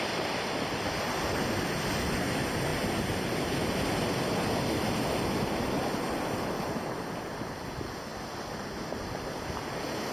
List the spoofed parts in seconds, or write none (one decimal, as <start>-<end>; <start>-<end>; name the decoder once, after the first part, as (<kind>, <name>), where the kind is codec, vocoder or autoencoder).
none